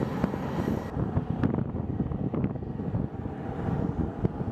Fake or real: real